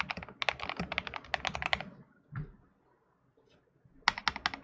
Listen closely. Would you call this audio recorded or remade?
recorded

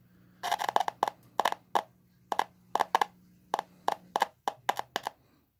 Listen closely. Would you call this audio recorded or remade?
recorded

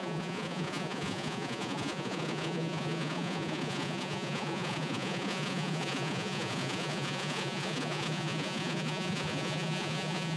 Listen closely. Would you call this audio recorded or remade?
remade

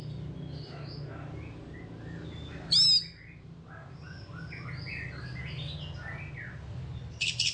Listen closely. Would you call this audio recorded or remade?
recorded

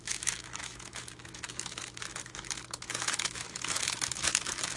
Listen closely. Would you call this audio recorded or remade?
remade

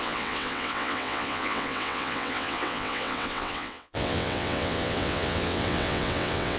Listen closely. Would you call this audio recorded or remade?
remade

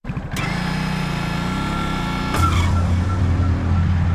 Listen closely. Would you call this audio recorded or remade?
recorded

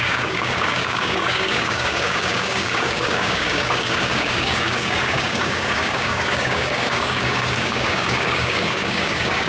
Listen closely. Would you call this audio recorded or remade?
remade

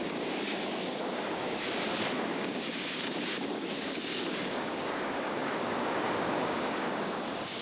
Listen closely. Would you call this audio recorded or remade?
remade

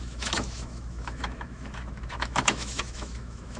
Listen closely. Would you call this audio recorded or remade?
remade